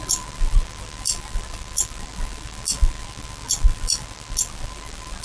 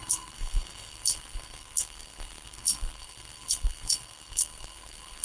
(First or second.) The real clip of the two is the first